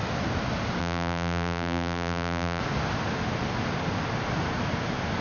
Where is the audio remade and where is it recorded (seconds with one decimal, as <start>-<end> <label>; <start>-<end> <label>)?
0.0-0.8 recorded; 0.8-2.6 remade; 2.6-5.2 recorded